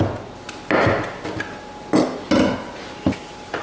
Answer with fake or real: real